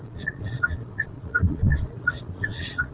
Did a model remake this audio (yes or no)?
yes